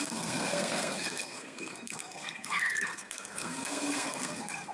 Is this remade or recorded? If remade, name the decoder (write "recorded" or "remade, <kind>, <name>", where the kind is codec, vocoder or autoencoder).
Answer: remade, codec, SNAC